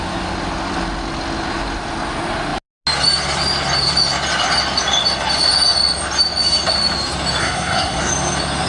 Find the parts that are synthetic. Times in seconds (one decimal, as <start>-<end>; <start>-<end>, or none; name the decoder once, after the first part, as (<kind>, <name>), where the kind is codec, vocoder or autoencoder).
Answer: 7.4-8.1 (codec, SNAC)